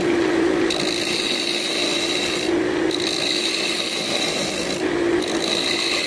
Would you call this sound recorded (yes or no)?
yes